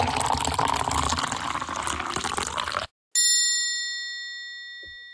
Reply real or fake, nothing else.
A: real